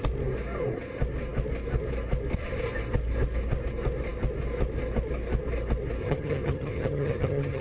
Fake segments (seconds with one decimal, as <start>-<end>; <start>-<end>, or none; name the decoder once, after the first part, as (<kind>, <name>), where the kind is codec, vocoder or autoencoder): 6.0-7.6 (vocoder, HiFi-GAN)